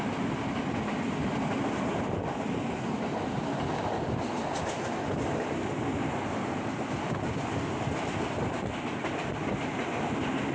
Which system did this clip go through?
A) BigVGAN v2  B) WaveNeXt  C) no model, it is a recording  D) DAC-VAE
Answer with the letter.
C